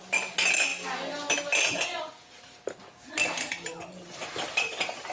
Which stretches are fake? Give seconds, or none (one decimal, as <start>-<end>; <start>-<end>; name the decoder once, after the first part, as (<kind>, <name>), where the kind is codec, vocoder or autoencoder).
none